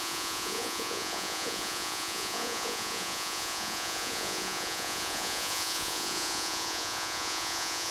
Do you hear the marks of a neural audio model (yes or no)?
yes